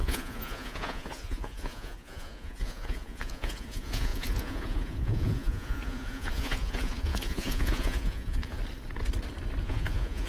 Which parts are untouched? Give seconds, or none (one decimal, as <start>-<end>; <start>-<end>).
8.6-9.6